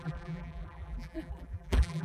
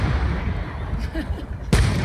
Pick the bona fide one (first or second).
second